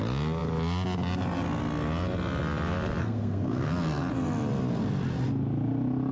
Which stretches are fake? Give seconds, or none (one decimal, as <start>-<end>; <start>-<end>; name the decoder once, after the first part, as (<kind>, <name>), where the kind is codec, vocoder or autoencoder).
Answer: 3.0-3.7 (codec, SNAC)